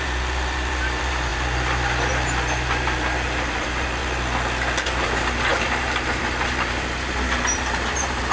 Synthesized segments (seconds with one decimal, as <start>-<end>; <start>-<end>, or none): 0.0-4.0; 4.8-8.3